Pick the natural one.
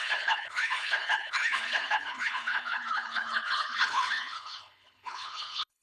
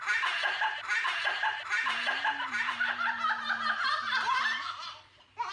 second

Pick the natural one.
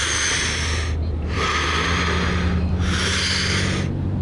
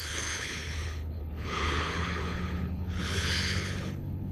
first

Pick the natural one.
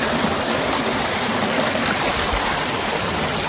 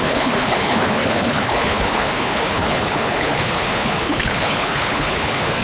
first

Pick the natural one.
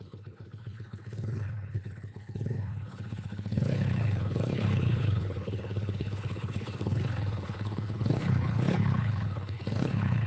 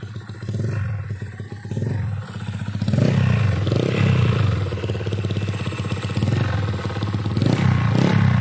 second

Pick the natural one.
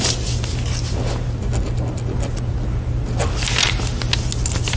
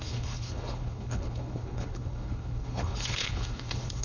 first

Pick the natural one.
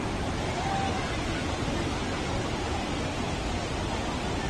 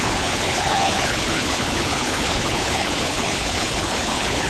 first